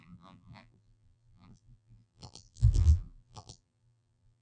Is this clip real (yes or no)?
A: no